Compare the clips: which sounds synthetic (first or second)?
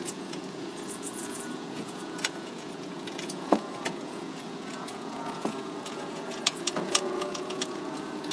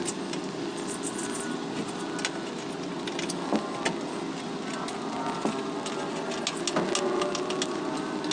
first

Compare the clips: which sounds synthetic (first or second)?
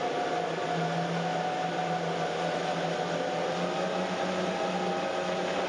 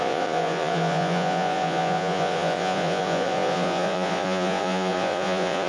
second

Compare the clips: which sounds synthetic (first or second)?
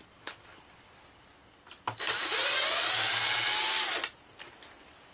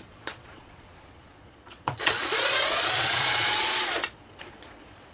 second